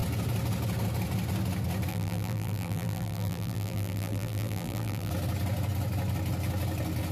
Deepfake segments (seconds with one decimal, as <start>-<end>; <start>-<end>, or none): 1.9-5.1